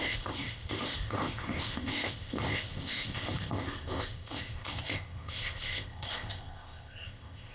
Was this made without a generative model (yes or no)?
no